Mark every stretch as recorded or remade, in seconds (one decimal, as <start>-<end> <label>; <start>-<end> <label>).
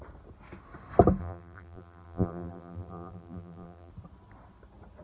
0.0-1.2 recorded; 1.2-3.9 remade; 3.9-5.0 recorded